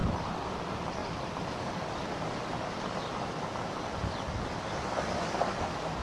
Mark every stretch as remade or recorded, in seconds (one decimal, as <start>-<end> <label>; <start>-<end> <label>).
0.0-0.6 remade; 0.6-1.0 recorded; 1.0-2.1 remade; 2.1-6.0 recorded